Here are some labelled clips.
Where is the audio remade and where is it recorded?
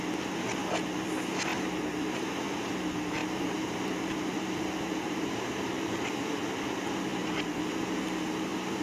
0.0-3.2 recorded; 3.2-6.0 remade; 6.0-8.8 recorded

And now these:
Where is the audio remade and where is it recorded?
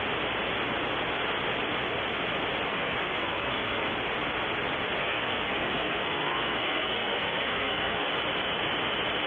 0.0-2.7 recorded; 2.7-3.9 remade; 3.9-5.0 recorded; 5.0-8.1 remade; 8.1-9.3 recorded